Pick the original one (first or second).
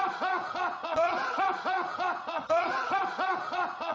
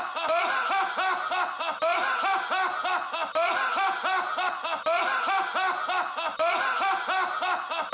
second